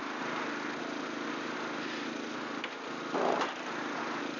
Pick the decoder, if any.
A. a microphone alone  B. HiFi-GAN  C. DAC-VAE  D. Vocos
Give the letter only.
A